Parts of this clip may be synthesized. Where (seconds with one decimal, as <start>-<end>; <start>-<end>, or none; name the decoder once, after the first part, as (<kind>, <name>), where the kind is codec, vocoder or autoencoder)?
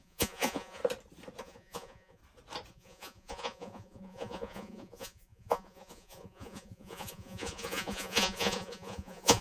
0.0-0.8 (vocoder, Vocos); 1.4-2.2; 2.7-9.4